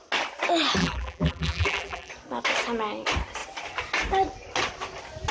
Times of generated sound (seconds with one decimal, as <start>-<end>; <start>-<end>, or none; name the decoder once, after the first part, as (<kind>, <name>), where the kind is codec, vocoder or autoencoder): 0.8-2.1 (vocoder, BigVGAN v2)